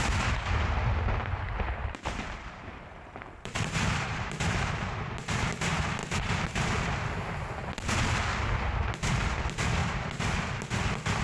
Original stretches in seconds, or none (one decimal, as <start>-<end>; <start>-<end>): 0.0-1.8; 4.4-11.2